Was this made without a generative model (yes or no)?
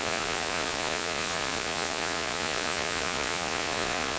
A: no